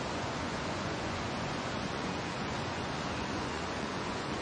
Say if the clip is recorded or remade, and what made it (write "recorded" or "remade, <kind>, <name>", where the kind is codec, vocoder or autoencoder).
remade, vocoder, Vocos